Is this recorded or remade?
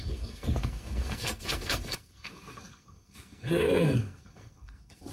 remade